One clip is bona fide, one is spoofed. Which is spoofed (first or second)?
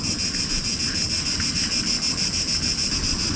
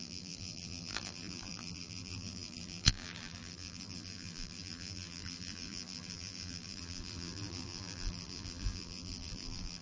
second